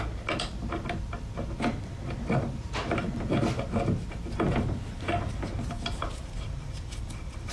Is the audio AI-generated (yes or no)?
no